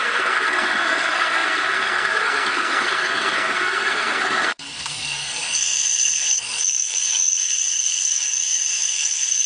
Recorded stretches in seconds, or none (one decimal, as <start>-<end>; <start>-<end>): none